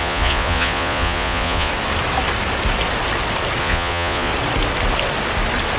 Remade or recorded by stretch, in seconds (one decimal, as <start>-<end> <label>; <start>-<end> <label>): 0.0-1.7 remade; 1.7-3.6 recorded; 3.6-4.3 remade; 4.3-5.8 recorded